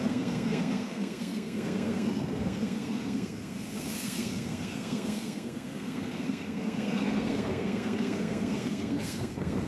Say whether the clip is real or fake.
fake